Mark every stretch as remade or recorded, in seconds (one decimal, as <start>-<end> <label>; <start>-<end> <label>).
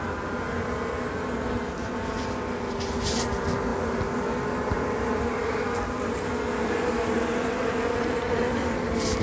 0.0-9.2 recorded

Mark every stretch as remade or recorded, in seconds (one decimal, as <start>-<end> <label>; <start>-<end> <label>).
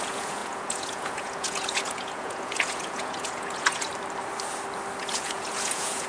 0.0-3.9 remade; 3.9-5.0 recorded; 5.0-6.1 remade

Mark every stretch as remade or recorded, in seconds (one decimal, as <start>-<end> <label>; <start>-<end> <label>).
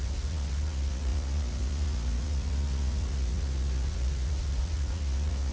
0.0-5.5 remade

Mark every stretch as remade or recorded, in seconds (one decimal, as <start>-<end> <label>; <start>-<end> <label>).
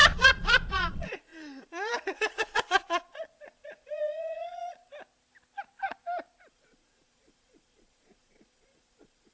0.0-4.9 remade; 4.9-6.5 recorded; 6.5-9.3 remade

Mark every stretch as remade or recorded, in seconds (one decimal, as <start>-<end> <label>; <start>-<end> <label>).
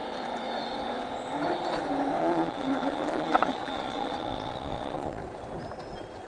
0.0-2.2 recorded; 2.2-5.2 remade; 5.2-6.3 recorded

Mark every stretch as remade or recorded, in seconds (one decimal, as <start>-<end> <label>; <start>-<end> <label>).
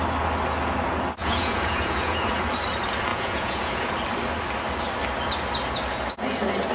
0.0-1.2 recorded; 1.2-2.3 remade; 2.3-3.1 recorded; 3.1-3.9 remade; 3.9-6.7 recorded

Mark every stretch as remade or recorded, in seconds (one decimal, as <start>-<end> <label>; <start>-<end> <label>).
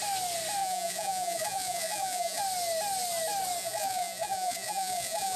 0.0-0.6 recorded; 0.6-2.4 remade; 2.4-3.6 recorded; 3.6-5.4 remade